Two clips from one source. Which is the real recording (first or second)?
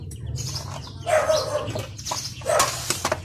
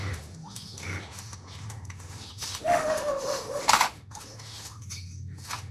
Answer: first